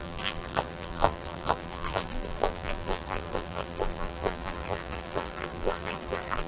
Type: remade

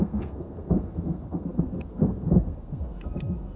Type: remade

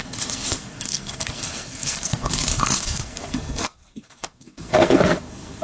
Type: remade